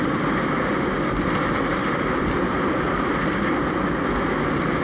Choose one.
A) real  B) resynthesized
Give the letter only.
A